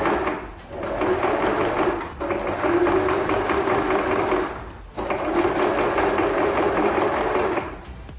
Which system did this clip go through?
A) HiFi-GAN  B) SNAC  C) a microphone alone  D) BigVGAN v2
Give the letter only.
C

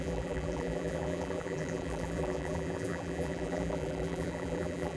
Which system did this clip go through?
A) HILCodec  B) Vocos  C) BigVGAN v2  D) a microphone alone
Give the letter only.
C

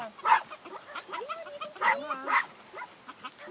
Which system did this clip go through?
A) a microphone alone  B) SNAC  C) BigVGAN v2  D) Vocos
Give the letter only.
A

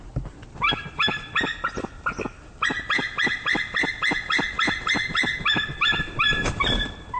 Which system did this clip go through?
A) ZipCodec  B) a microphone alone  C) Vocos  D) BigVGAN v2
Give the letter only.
B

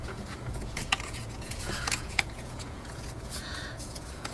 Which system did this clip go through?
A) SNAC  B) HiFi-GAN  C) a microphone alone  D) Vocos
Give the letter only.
D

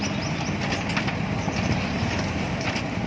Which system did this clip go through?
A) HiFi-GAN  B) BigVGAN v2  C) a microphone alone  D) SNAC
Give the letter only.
C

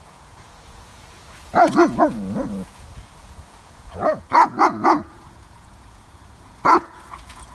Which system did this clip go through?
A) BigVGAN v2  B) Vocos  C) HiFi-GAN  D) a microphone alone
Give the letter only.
B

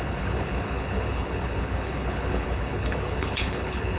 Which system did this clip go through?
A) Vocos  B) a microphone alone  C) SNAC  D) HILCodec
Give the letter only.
D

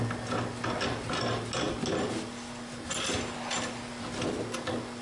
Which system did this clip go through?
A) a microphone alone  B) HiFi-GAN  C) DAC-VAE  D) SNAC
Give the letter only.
A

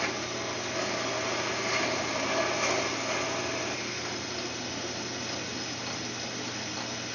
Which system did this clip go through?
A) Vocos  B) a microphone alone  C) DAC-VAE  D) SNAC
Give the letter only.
B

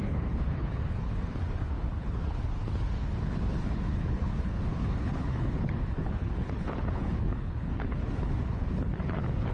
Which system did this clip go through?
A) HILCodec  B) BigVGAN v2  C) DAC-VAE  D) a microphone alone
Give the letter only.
A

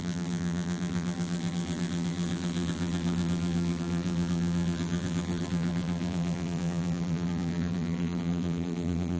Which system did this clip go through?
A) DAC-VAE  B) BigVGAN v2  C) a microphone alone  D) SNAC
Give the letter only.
B